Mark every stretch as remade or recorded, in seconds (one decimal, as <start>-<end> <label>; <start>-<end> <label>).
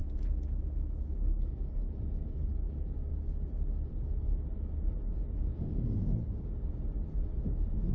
0.0-1.0 recorded; 1.0-3.1 remade; 3.1-5.4 recorded; 5.4-6.6 remade; 6.6-7.9 recorded